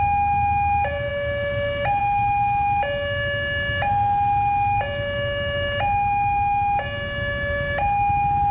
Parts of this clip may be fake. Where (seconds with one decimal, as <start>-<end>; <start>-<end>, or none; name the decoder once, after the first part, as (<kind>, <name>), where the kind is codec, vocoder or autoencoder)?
none